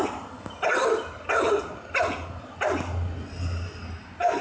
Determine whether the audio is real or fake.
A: real